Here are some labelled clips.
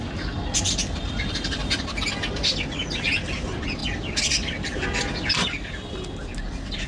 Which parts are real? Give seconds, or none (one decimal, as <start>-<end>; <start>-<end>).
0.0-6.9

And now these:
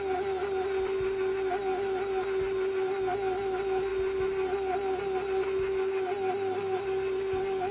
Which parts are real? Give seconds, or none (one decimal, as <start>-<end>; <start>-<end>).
0.0-7.7

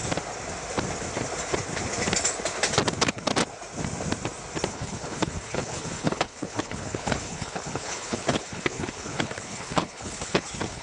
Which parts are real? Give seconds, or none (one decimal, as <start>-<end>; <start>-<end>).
0.0-2.9; 3.3-4.7

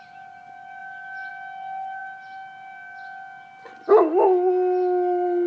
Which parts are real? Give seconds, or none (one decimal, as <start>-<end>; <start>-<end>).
0.0-5.5